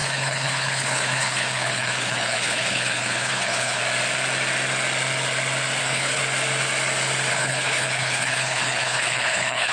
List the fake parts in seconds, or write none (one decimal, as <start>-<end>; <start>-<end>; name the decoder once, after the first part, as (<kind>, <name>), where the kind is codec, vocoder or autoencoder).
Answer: 0.0-3.8 (codec, HILCodec); 5.8-6.2; 7.3-9.7